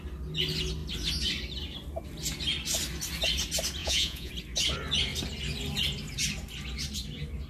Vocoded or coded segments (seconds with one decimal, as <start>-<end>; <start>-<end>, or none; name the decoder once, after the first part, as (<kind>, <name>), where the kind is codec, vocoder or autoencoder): 3.8-4.3 (vocoder, Vocos)